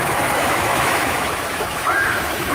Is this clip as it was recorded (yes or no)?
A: no